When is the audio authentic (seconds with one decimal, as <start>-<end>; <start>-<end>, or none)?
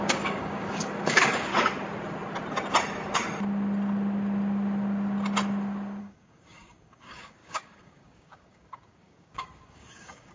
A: 1.5-6.0